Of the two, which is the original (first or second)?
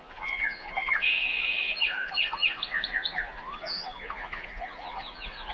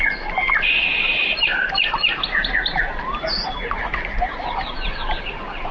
second